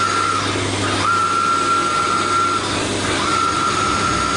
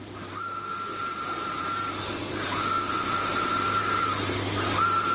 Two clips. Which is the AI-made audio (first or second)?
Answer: second